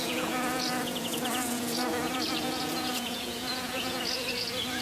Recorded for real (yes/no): no